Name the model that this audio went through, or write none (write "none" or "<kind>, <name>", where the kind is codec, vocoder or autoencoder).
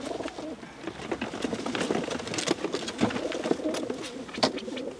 none